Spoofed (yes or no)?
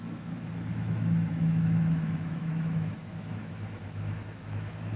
yes